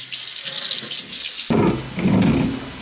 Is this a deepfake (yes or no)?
no